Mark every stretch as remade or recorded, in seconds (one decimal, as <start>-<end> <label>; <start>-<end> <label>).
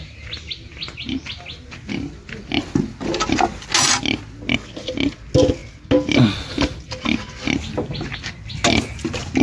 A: 0.0-9.4 recorded